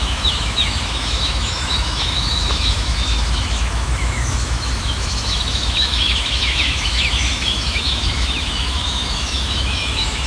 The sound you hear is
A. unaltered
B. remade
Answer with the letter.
B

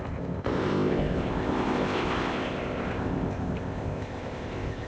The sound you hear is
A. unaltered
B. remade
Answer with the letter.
B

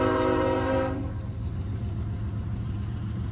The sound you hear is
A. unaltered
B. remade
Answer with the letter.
B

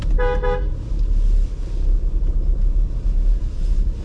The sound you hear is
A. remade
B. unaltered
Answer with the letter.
B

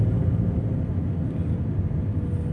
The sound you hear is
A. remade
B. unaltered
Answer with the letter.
B